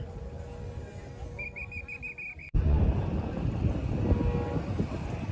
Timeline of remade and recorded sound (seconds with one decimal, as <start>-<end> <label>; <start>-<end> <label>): 0.0-2.4 recorded; 2.4-2.9 remade; 2.9-5.3 recorded